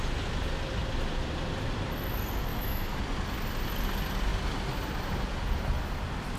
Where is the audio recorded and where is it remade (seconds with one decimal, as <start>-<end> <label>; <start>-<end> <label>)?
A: 0.0-2.5 recorded; 2.5-3.0 remade; 3.0-6.4 recorded